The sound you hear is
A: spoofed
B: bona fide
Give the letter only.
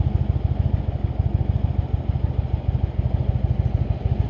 B